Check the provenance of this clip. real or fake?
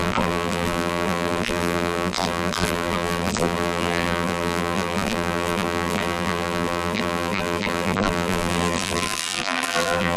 fake